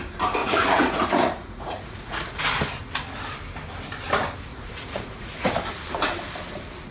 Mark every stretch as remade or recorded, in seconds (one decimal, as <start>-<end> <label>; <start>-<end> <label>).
0.0-0.4 recorded; 0.4-2.4 remade; 2.4-4.5 recorded; 4.5-5.5 remade; 5.5-6.9 recorded